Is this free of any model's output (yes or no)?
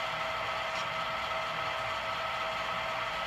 yes